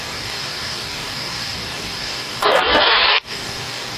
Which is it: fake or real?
fake